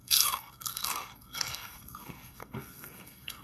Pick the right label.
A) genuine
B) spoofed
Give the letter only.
B